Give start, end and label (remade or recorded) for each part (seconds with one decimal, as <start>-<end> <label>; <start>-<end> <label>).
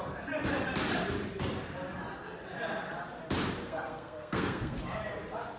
0.0-3.6 recorded; 3.6-4.8 remade; 4.8-5.6 recorded